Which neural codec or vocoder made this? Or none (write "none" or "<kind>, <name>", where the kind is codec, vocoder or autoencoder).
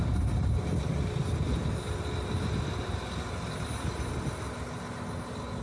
none